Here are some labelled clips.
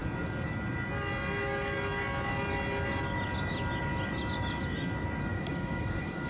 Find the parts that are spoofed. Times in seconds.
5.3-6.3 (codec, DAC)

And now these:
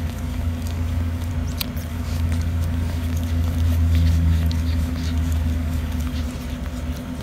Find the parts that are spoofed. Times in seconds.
0.0-1.3 (codec, DAC); 1.9-6.2